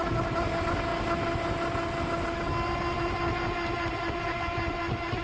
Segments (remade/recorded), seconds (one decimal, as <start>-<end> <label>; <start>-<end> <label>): 0.0-5.2 recorded